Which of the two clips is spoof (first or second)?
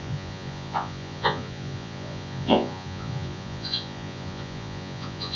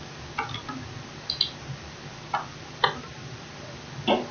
first